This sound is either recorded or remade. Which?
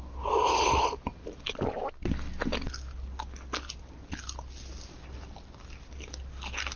recorded